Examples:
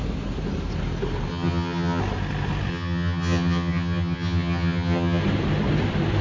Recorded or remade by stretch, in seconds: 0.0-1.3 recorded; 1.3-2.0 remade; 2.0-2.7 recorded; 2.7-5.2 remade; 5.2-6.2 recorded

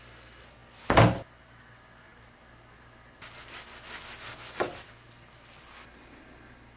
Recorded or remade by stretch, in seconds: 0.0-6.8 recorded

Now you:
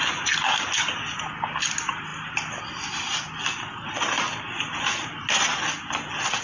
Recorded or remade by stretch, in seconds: 0.0-6.4 recorded

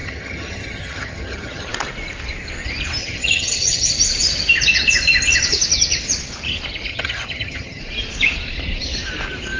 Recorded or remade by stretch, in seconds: 0.0-1.7 remade; 1.7-3.0 recorded; 3.0-3.9 remade; 3.9-6.9 recorded; 6.9-7.8 remade; 7.8-9.6 recorded

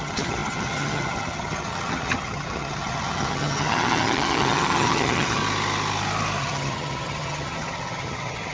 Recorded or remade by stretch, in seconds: 0.0-5.4 remade; 5.4-6.4 recorded; 6.4-8.5 remade

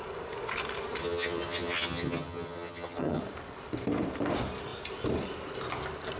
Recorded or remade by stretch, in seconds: 0.0-1.0 recorded; 1.0-3.2 remade; 3.2-6.2 recorded